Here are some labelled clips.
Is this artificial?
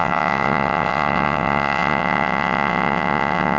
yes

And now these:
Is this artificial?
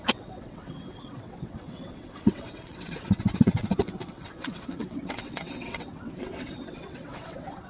yes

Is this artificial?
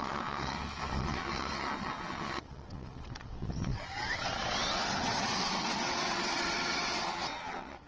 yes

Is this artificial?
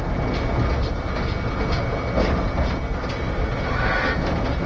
no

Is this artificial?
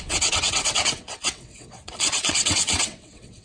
yes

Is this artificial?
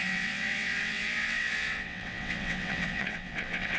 yes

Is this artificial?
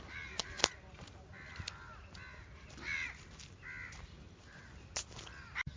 no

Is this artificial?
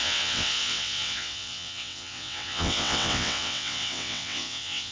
yes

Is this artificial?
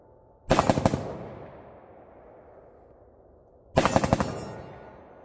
no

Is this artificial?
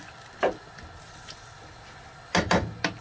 no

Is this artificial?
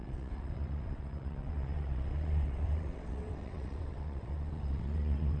yes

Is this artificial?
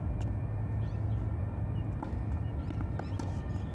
no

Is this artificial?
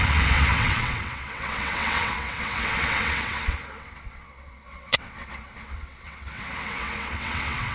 yes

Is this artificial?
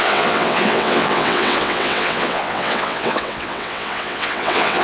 yes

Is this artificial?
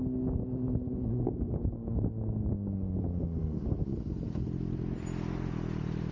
no